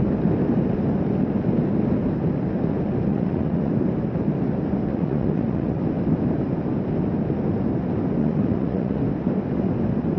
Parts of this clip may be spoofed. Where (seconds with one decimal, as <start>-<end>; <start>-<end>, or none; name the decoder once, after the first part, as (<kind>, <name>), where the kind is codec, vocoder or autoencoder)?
3.1-3.7 (vocoder, Vocos); 4.9-5.8; 8.2-9.0